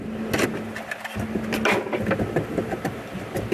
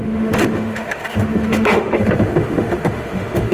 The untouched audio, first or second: first